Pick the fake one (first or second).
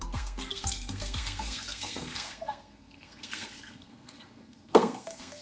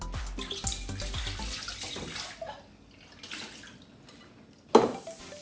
first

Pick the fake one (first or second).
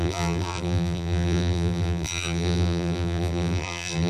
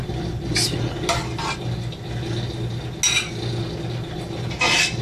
first